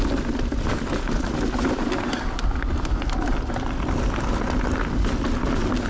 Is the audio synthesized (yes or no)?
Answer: no